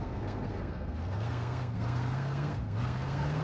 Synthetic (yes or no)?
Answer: yes